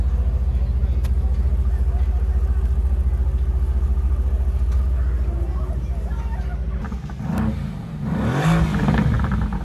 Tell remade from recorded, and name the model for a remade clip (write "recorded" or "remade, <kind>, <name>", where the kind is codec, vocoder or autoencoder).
recorded